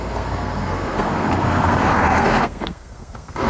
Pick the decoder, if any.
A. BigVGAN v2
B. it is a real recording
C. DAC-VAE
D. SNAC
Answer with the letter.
D